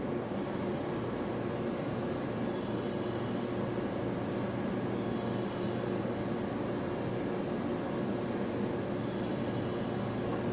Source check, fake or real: real